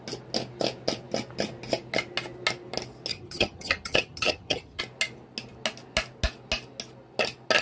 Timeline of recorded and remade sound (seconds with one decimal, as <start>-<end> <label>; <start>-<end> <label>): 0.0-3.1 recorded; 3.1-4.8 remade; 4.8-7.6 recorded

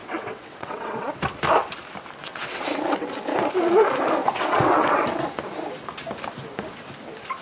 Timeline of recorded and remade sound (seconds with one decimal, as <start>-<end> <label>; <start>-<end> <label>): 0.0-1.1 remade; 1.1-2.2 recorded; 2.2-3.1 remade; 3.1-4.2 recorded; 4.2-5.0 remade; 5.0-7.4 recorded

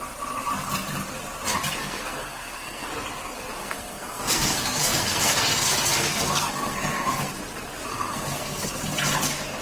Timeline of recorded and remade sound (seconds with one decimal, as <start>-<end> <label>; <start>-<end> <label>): 0.0-1.8 recorded; 1.8-2.9 remade; 2.9-3.6 recorded; 3.6-7.3 remade; 7.3-7.9 recorded; 7.9-8.7 remade; 8.7-9.6 recorded

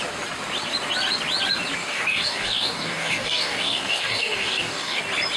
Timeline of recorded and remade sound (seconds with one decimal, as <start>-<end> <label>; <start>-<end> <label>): 0.0-1.8 recorded; 1.8-5.0 remade; 5.0-5.4 recorded